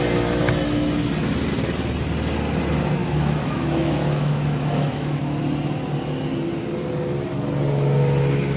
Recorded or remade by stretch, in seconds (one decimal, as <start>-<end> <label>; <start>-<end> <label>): 0.0-3.0 recorded; 3.0-5.2 remade; 5.2-8.6 recorded